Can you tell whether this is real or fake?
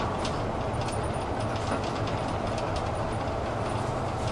real